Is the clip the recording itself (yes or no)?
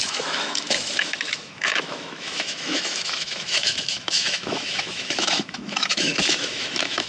no